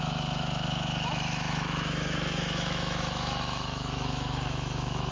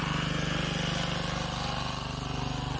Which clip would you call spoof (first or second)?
first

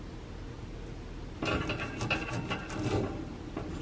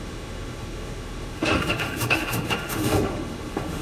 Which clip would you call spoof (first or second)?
second